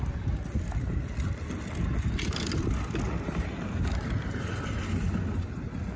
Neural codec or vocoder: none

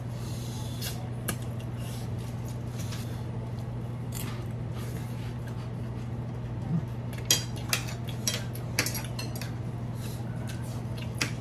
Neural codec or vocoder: none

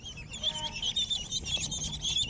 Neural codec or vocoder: none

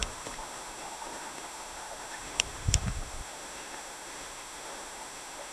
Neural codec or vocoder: autoencoder, DAC-VAE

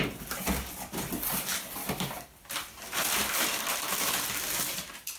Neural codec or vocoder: none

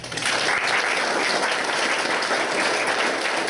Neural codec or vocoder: none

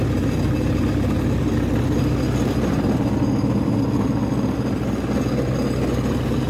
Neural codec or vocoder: none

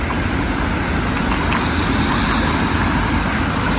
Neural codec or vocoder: none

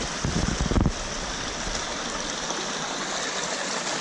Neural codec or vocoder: none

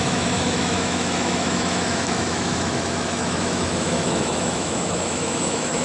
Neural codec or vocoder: autoencoder, DAC-VAE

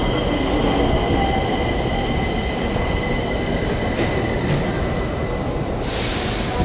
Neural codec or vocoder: none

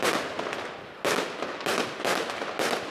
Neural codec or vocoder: none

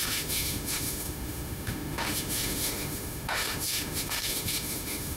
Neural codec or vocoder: autoencoder, DAC-VAE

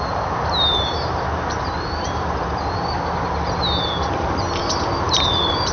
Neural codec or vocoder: none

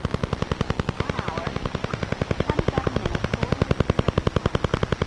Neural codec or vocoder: none